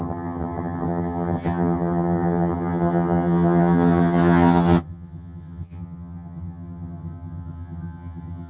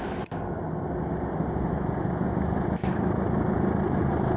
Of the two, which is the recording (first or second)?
second